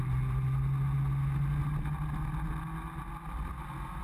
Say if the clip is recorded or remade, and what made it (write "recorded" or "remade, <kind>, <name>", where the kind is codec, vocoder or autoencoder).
recorded